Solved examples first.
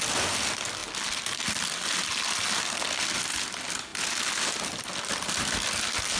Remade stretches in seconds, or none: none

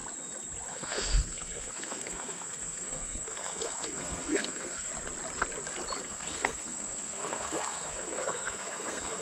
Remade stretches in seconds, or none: 0.7-4.9 (codec, SNAC); 6.0-9.2

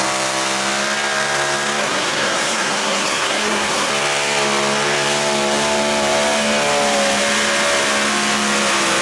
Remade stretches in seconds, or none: 1.8-3.9 (codec, SNAC)

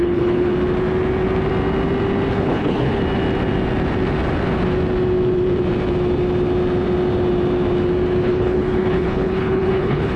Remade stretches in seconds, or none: 0.0-0.5 (codec, HILCodec); 2.3-2.9; 8.2-10.2

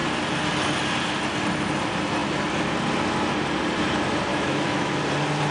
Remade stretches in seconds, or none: 4.3-4.9 (autoencoder, DAC-VAE)

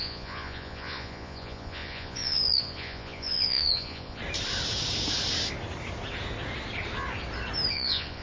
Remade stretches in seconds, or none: 0.0-4.2 (vocoder, Vocos); 7.7-8.2

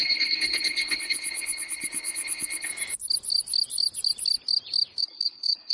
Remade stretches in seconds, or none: 0.0-2.7 (codec, HILCodec); 5.0-5.7

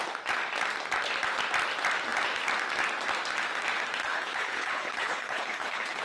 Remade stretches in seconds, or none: 4.0-6.0 (codec, HILCodec)